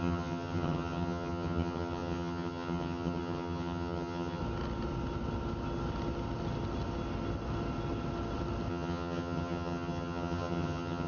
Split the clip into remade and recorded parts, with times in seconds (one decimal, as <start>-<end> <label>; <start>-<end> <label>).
0.0-4.4 remade; 4.4-8.7 recorded; 8.7-11.1 remade